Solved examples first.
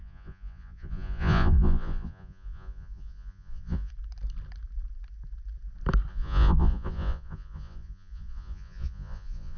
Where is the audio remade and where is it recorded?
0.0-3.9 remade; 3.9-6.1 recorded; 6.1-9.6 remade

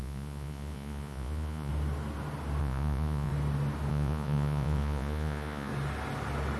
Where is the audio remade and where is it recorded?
0.0-1.7 remade; 1.7-2.6 recorded; 2.6-3.3 remade; 3.3-3.9 recorded; 3.9-5.7 remade; 5.7-6.6 recorded

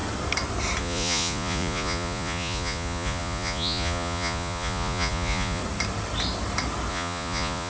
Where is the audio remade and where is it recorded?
0.0-0.8 recorded; 0.8-5.6 remade; 5.6-6.9 recorded; 6.9-7.7 remade

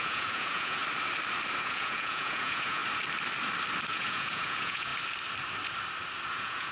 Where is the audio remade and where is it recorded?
0.0-0.8 remade; 0.8-1.6 recorded; 1.6-2.8 remade; 2.8-3.9 recorded; 3.9-4.9 remade; 4.9-6.3 recorded; 6.3-6.7 remade

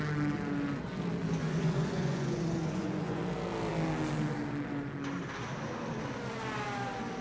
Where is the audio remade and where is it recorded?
0.0-1.4 recorded; 1.4-3.2 remade; 3.2-7.2 recorded